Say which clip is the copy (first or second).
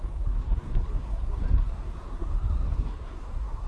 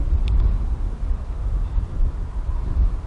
first